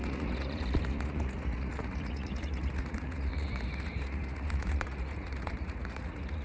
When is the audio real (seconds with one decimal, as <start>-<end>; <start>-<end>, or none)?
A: none